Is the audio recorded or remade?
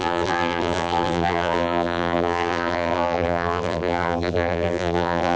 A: remade